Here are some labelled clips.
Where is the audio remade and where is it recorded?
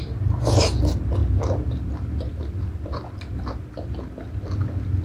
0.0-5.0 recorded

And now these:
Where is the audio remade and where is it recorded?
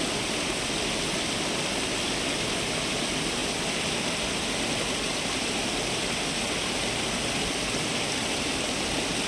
0.0-9.3 recorded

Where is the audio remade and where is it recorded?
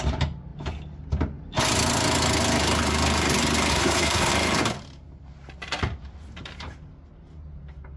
0.0-3.7 recorded; 3.7-4.3 remade; 4.3-8.0 recorded